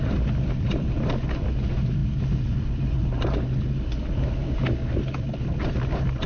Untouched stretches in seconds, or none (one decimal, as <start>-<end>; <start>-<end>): 0.0-6.3